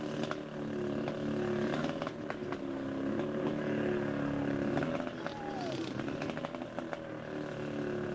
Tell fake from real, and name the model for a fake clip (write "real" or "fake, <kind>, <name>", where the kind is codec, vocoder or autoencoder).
real